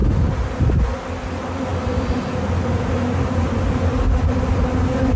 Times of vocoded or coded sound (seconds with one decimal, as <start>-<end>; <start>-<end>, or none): none